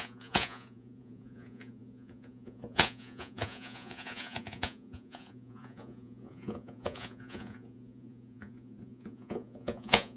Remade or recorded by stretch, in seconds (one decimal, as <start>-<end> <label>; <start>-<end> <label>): 0.0-10.2 remade